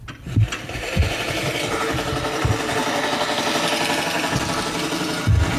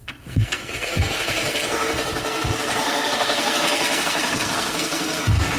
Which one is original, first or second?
first